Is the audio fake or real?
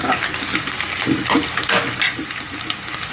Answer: real